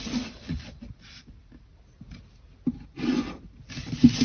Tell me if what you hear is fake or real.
real